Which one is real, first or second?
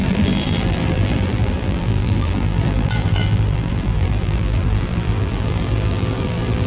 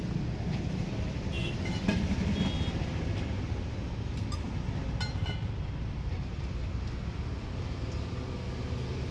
second